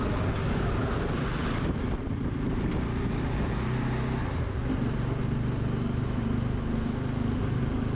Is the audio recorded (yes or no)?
yes